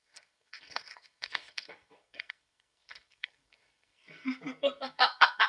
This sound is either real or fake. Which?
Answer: fake